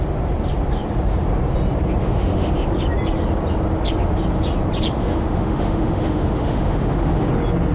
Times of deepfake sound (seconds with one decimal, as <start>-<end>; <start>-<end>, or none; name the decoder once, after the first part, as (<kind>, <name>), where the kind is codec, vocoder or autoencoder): 2.0-2.5 (autoencoder, DAC-VAE); 5.0-7.3